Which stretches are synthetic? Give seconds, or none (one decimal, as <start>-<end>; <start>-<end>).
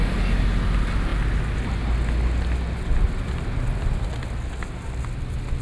none